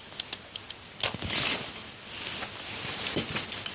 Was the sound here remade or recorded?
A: recorded